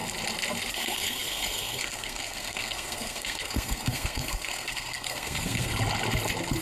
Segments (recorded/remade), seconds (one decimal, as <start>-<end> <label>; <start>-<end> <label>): 0.0-0.7 recorded; 0.7-5.7 remade; 5.7-6.6 recorded